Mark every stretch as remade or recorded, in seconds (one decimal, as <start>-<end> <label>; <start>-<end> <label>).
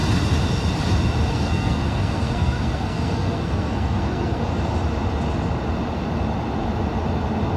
0.0-1.3 recorded; 1.3-4.4 remade; 4.4-7.6 recorded